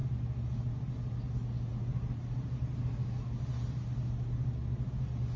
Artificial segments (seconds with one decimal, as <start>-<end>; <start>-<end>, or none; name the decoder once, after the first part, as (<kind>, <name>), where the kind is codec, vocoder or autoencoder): none